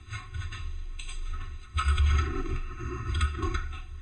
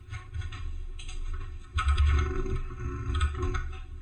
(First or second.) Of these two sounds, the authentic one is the second